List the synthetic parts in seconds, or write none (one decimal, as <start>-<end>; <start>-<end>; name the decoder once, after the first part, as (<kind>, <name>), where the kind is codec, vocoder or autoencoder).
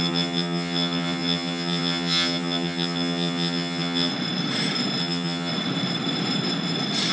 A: 0.0-4.1 (vocoder, HiFi-GAN); 5.0-5.5